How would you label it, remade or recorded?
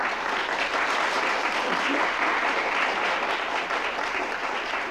recorded